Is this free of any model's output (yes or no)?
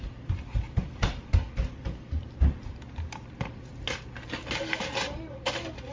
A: yes